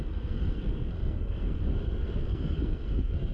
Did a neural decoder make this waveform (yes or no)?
yes